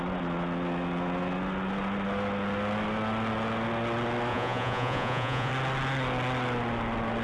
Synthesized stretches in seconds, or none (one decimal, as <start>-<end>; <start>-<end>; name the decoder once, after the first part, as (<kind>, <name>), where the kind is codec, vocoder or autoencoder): 4.3-5.5 (vocoder, Vocos)